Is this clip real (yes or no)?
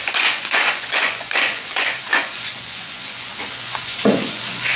no